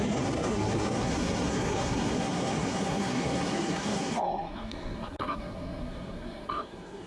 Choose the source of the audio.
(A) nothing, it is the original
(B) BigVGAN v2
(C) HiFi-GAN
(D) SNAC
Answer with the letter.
D